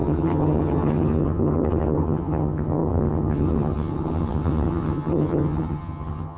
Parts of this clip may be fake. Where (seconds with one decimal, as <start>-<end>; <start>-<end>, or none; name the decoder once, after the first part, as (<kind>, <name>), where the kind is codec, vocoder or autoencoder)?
0.0-6.4 (vocoder, HiFi-GAN)